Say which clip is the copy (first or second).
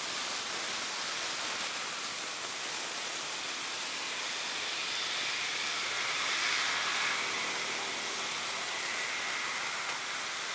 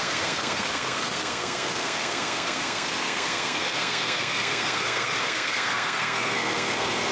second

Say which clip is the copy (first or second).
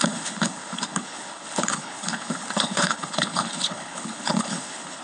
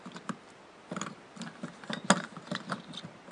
first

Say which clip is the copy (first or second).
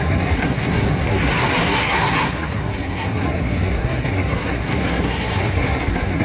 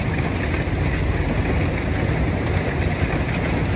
first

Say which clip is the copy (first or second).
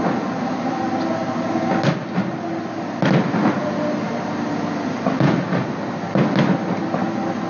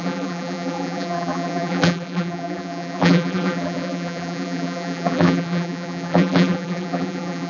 second